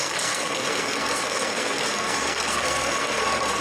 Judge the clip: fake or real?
fake